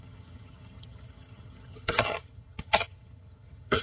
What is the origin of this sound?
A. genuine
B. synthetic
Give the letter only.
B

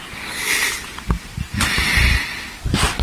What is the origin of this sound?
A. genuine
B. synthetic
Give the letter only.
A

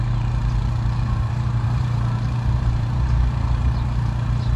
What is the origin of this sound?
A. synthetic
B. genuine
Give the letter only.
A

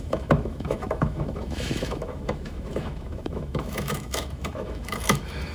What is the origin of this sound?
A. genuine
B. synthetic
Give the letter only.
B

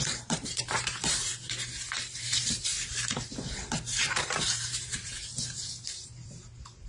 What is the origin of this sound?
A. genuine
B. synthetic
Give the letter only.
B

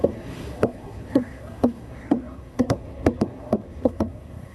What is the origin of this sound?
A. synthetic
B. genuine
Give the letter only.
A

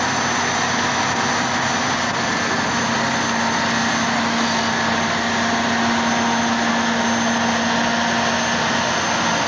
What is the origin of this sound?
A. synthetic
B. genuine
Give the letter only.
B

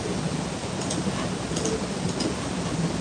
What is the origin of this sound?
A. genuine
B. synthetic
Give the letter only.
A